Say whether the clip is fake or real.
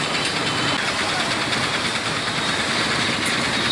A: real